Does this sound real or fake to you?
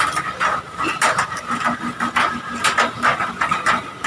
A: real